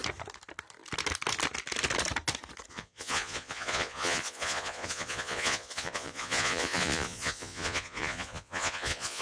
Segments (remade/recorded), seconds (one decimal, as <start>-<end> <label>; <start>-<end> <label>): 0.0-2.7 recorded; 2.7-9.2 remade